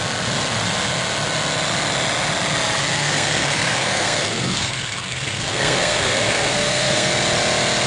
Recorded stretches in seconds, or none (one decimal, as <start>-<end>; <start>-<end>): 0.0-2.8; 7.1-7.9